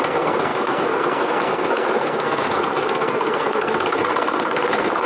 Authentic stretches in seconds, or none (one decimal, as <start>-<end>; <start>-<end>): none